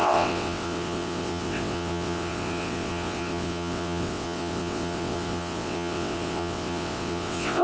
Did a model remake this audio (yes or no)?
yes